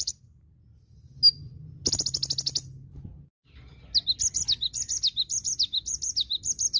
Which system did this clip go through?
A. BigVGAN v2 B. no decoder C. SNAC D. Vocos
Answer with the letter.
B